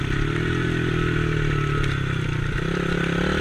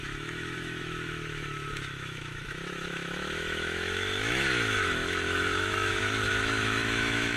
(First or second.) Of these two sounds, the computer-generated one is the second